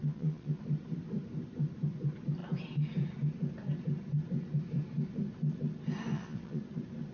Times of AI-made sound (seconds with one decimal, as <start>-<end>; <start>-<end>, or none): 0.0-0.6; 6.1-6.6